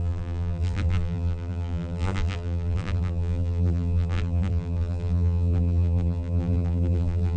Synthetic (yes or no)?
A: yes